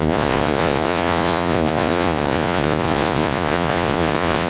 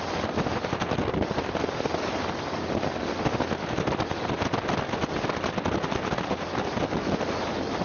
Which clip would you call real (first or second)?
second